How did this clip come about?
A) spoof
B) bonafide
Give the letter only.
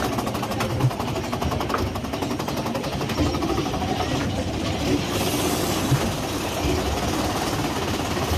B